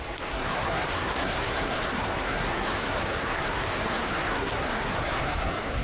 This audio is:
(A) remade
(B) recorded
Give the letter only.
A